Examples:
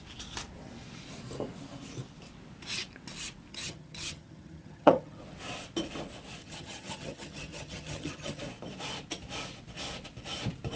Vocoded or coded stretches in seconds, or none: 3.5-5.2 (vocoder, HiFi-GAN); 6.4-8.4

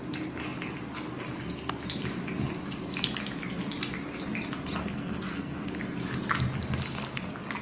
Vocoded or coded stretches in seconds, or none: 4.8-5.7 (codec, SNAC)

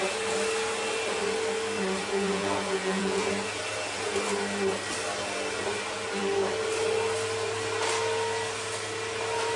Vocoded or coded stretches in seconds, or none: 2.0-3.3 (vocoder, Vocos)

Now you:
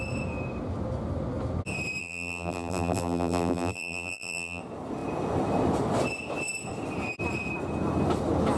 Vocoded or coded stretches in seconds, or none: 2.0-4.6 (vocoder, BigVGAN v2)

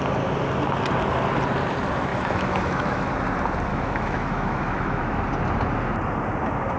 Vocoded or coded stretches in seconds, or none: 2.1-3.1 (autoencoder, DAC-VAE); 3.7-5.2